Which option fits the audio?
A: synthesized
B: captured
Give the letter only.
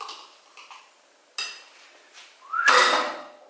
B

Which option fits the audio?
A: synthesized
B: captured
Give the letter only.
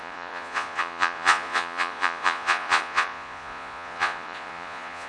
A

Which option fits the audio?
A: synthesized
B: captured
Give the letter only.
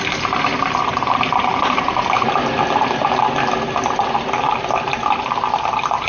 B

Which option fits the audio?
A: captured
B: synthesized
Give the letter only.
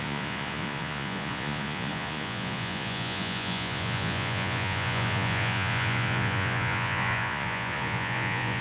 B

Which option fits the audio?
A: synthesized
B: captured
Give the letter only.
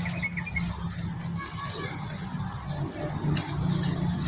B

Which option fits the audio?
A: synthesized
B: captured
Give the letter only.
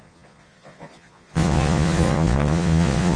A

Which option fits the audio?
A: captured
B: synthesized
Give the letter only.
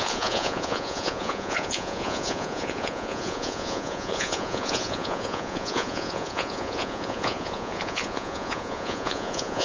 B